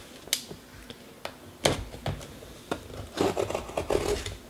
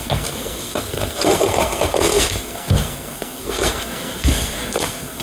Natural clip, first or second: first